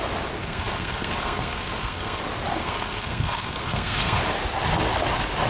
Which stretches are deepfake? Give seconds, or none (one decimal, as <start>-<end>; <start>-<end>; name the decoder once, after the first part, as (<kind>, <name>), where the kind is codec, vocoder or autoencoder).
0.4-2.2 (codec, SNAC); 2.6-4.2